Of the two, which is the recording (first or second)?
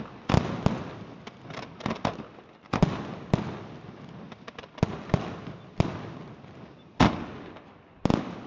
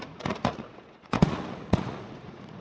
first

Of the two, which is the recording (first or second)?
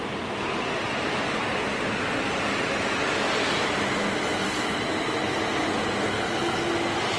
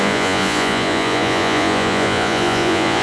first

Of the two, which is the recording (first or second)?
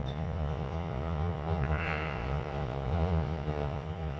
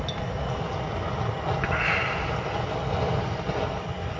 second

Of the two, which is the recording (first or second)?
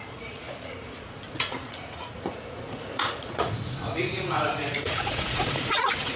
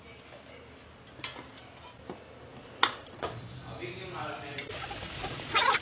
second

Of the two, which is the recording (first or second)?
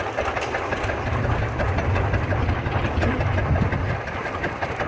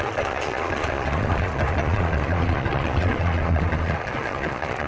first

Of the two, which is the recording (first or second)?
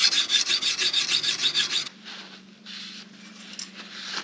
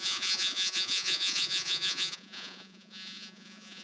first